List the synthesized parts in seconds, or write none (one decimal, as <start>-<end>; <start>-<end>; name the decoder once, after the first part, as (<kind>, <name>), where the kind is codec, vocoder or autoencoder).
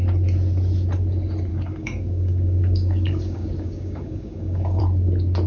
1.5-4.8 (codec, DAC)